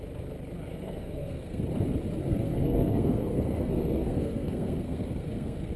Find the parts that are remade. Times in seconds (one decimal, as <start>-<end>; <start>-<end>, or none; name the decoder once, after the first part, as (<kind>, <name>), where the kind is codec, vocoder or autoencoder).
0.7-1.6 (codec, SNAC); 2.2-5.8